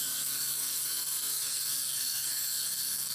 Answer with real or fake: fake